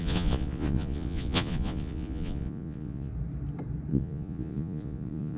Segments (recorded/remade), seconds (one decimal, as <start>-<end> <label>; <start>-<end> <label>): 0.0-3.1 remade; 3.1-3.9 recorded; 3.9-5.4 remade